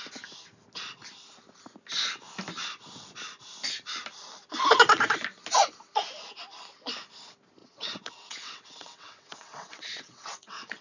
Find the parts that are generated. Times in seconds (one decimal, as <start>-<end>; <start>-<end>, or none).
7.6-10.8